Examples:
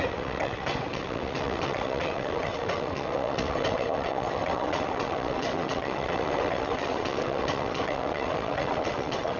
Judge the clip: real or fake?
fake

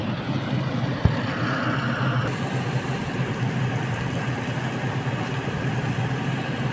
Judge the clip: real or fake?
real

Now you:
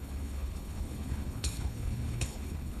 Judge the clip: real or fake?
fake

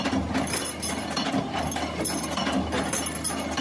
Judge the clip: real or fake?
real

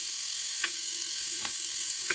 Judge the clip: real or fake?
fake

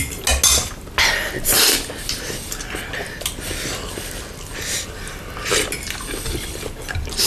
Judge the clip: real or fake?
real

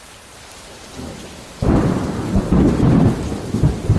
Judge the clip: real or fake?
fake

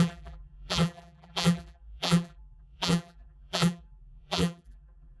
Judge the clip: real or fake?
fake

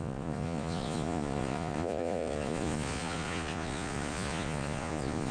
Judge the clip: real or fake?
fake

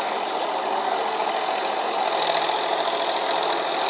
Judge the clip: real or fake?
real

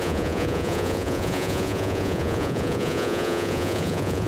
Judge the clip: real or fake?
fake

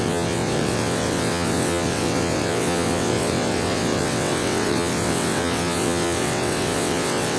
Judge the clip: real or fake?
fake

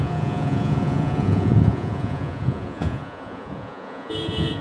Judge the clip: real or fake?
fake